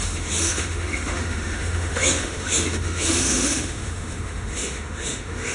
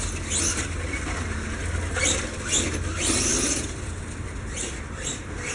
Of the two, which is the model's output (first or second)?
first